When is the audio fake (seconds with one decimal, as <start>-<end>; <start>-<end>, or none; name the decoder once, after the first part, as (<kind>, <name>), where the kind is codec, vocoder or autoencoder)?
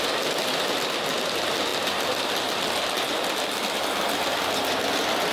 none